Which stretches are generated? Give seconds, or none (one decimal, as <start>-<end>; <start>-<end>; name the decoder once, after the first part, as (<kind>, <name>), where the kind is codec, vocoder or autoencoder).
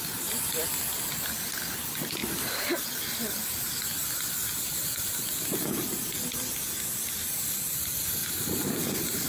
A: none